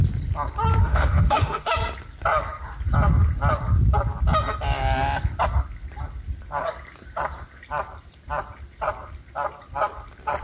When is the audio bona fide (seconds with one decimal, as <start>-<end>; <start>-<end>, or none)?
0.0-0.8; 1.7-10.4